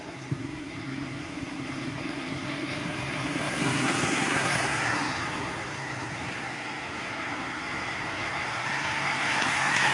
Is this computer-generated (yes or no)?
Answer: yes